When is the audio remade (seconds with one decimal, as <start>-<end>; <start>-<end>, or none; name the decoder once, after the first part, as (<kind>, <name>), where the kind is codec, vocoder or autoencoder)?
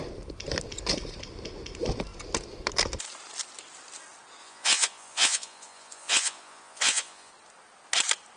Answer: 4.4-7.3 (vocoder, Vocos)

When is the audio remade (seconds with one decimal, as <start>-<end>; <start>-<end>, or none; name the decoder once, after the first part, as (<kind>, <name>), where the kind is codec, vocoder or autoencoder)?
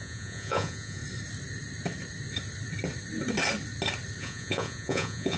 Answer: 0.0-1.0 (vocoder, Vocos); 4.2-5.4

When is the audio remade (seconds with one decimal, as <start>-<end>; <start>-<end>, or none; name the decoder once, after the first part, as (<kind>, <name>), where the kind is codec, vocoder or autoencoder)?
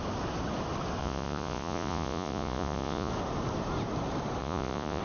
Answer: 1.0-3.1 (vocoder, Vocos); 4.4-5.0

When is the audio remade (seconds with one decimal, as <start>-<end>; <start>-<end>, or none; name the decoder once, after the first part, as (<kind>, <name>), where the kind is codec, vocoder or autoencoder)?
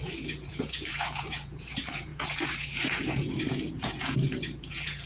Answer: 0.0-5.1 (vocoder, Vocos)